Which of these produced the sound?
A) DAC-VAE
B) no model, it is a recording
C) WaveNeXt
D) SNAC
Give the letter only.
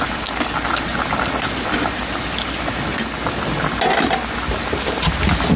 B